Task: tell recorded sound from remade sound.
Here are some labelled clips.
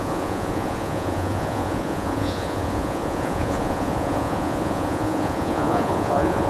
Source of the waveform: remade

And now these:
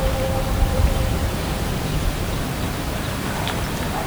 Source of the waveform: remade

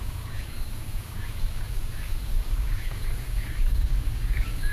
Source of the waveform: remade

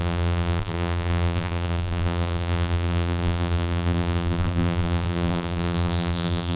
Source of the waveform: remade